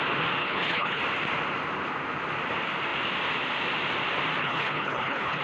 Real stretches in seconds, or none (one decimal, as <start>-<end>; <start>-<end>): 0.0-0.4; 1.0-4.4